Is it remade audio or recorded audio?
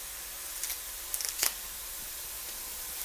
recorded